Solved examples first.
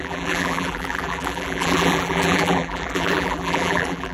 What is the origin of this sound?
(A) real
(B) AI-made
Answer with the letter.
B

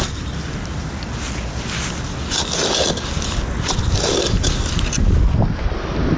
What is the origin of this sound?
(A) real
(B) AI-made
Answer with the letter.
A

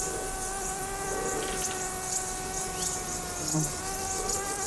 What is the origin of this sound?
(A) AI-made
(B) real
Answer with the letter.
B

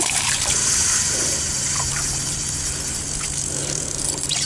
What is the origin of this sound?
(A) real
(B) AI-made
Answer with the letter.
B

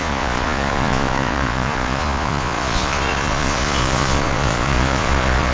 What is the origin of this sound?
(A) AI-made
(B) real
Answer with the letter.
A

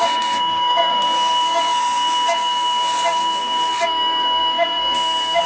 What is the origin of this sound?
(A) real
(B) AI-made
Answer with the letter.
B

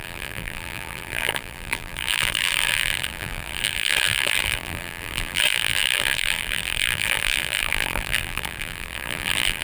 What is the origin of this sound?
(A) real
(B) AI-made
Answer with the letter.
B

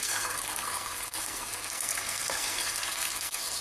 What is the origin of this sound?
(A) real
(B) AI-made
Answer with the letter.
B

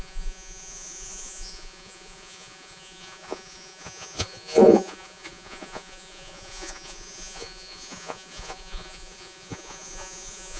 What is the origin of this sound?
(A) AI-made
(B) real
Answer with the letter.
A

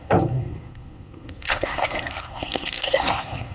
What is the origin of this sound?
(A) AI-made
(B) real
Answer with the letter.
A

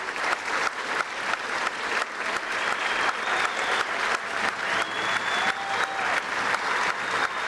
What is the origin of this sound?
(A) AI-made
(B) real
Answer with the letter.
B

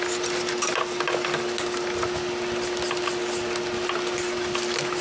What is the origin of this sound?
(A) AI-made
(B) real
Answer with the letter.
B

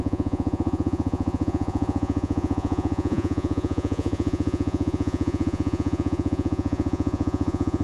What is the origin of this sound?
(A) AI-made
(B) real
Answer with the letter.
A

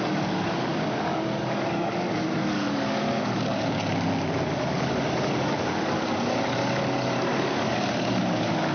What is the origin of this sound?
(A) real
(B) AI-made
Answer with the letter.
B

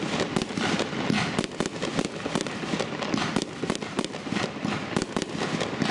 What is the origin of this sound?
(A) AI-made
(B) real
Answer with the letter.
B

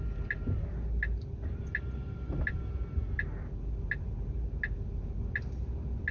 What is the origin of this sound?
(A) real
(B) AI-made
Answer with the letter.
A